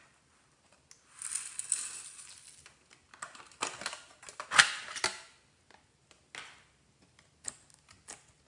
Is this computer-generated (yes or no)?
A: no